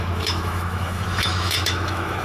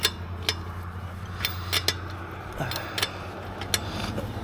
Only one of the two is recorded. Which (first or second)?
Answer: second